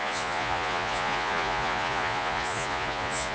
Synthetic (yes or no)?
yes